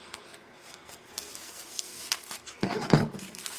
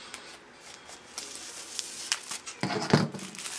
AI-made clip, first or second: first